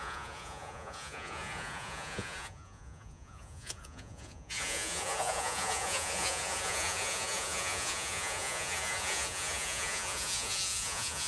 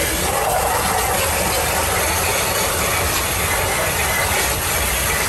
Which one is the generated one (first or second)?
first